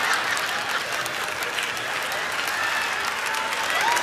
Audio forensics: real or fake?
real